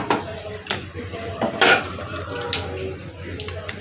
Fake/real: real